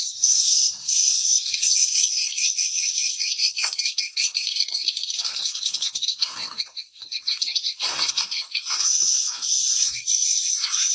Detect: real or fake fake